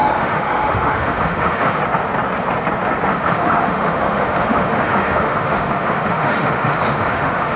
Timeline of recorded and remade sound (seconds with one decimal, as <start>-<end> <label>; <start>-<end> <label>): 0.0-1.8 remade; 1.8-3.1 recorded; 3.1-7.6 remade